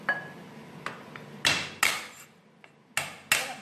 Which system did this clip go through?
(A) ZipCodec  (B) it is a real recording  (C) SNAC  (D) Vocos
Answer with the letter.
B